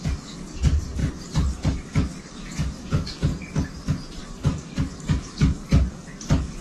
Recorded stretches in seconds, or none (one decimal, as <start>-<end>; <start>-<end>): 1.0-1.6; 3.3-4.2

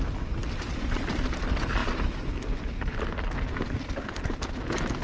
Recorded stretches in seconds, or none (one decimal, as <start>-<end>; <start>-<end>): 0.0-5.0

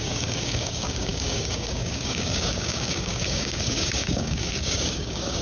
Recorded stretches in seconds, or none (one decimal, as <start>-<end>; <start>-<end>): none

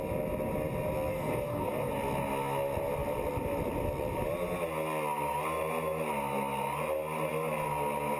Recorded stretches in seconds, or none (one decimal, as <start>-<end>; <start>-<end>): 0.0-1.1; 1.9-8.2

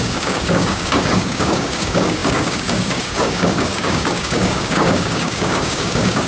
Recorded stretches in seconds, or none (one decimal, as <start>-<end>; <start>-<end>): none